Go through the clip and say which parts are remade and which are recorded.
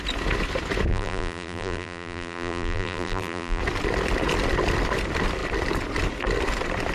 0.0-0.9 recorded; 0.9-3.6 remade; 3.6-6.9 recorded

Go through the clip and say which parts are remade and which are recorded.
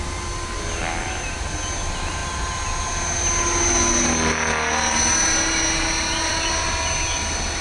0.0-7.6 recorded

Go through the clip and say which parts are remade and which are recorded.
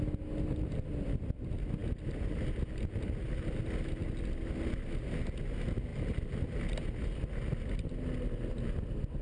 0.0-5.9 recorded; 5.9-6.8 remade; 6.8-9.2 recorded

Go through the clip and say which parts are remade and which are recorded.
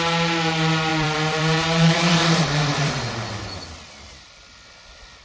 0.0-0.9 recorded; 0.9-3.5 remade; 3.5-5.2 recorded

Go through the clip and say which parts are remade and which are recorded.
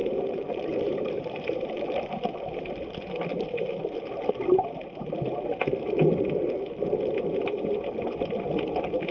0.0-2.0 remade; 2.0-9.1 recorded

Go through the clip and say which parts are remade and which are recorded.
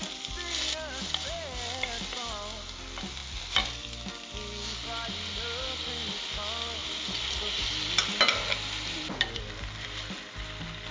0.0-6.8 recorded; 6.8-7.7 remade; 7.7-10.9 recorded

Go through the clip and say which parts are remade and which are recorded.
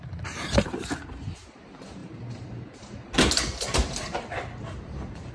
0.0-5.3 remade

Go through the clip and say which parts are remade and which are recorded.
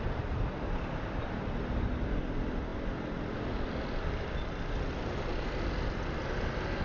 0.0-6.8 recorded